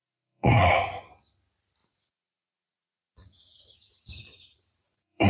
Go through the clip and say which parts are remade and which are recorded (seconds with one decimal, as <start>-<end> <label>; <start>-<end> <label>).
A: 0.0-0.7 remade; 0.7-1.8 recorded; 1.8-5.3 remade